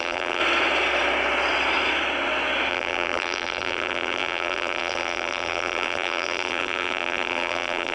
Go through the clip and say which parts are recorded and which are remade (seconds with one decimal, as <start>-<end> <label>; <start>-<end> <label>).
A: 0.0-0.4 remade; 0.4-2.7 recorded; 2.7-7.9 remade

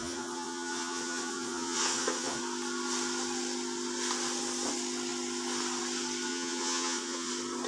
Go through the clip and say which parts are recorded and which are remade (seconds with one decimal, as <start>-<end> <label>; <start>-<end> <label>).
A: 0.0-2.4 remade; 2.4-6.3 recorded; 6.3-7.3 remade; 7.3-7.7 recorded

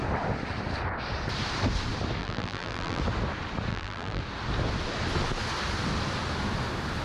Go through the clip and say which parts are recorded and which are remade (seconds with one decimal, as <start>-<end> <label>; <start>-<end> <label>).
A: 0.0-2.2 recorded; 2.2-3.0 remade; 3.0-3.7 recorded; 3.7-4.2 remade; 4.2-7.0 recorded

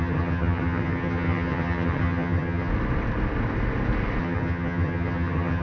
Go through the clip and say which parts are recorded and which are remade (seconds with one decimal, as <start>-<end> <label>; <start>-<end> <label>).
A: 0.0-2.7 remade; 2.7-4.2 recorded; 4.2-5.6 remade

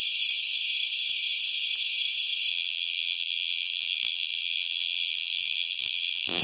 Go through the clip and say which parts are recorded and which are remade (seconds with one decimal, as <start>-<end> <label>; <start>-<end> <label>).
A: 0.0-2.5 recorded; 2.5-6.4 remade